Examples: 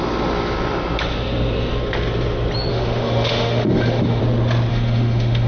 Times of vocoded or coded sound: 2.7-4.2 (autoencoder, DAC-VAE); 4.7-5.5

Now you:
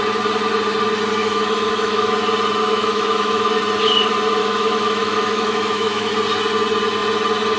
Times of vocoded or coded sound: 1.2-2.1 (autoencoder, DAC-VAE); 2.6-3.6; 4.4-6.1

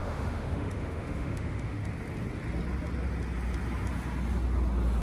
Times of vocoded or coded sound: 0.0-1.8 (autoencoder, DAC-VAE)

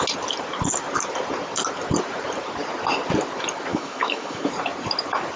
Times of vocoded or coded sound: 3.7-4.5 (autoencoder, DAC-VAE)

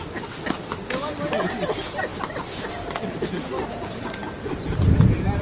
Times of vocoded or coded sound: none

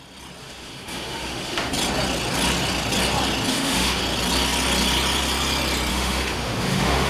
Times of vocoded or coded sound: 0.4-1.7 (autoencoder, DAC-VAE); 3.5-4.0; 5.9-7.1